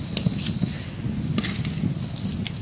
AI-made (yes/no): no